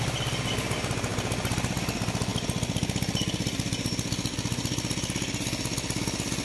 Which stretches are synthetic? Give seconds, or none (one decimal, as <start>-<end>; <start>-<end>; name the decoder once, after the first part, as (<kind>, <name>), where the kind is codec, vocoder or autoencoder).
none

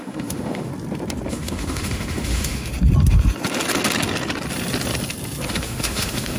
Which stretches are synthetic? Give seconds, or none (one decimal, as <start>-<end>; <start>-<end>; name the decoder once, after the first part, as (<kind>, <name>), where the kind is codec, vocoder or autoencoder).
0.0-0.7 (autoencoder, DAC-VAE); 1.3-2.7; 5.5-6.4

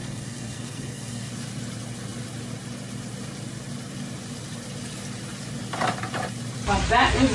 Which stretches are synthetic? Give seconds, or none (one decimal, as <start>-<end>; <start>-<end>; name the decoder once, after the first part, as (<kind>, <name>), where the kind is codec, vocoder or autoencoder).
0.0-1.3 (codec, SNAC)

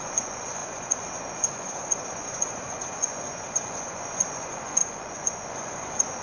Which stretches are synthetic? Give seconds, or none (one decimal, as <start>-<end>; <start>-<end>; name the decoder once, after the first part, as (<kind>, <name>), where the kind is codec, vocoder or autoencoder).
0.0-6.2 (vocoder, Vocos)

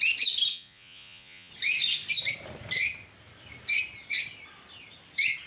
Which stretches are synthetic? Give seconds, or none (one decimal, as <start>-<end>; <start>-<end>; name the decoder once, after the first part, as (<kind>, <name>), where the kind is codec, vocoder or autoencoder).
0.5-1.5 (vocoder, Vocos)